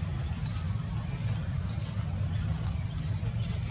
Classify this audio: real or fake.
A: real